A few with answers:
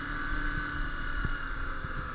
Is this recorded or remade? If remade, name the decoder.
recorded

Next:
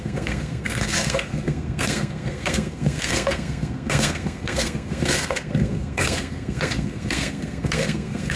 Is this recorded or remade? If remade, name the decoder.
remade, codec, SNAC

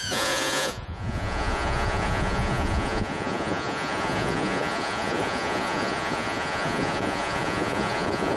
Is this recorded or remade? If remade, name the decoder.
remade, vocoder, Vocos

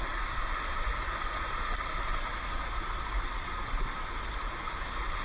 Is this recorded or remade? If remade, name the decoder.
recorded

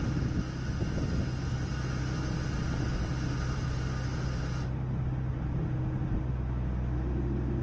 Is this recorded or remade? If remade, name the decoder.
recorded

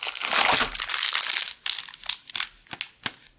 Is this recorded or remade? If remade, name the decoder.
recorded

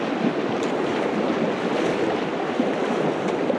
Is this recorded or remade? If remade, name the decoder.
recorded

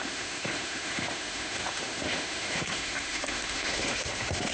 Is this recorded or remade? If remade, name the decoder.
remade, autoencoder, DAC-VAE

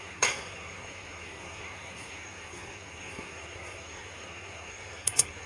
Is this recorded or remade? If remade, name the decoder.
remade, codec, SNAC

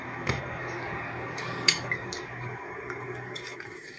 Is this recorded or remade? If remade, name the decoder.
remade, codec, DAC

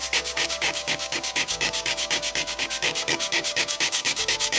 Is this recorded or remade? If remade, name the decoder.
remade, codec, DAC